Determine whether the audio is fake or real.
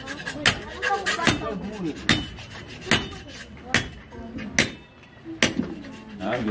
real